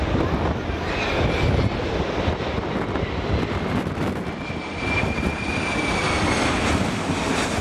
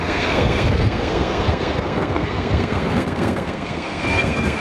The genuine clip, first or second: first